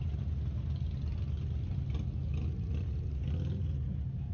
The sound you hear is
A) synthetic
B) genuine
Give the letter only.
B